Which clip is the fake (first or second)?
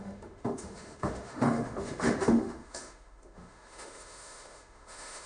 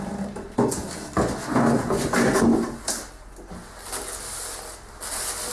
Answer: first